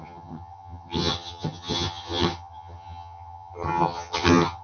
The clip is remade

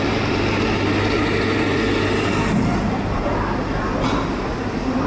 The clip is recorded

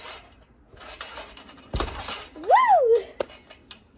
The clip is recorded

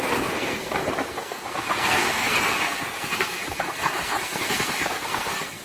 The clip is remade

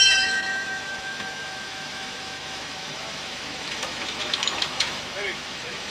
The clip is remade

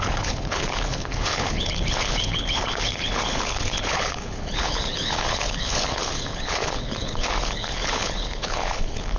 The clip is remade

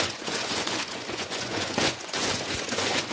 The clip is remade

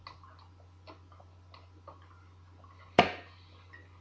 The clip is recorded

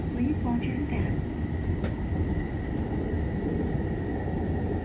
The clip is recorded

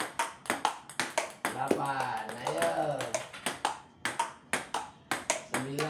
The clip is recorded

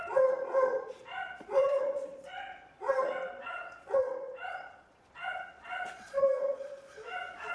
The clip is remade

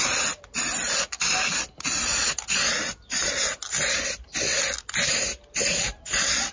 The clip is recorded